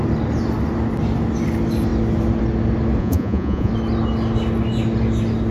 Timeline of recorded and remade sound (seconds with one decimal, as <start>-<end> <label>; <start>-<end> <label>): 0.0-3.0 recorded; 3.0-3.7 remade; 3.7-5.5 recorded